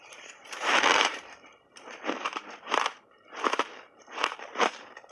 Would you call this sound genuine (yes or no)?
no